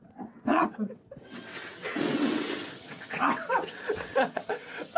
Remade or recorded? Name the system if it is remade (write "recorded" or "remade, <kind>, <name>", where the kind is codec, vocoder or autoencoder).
remade, vocoder, WaveNeXt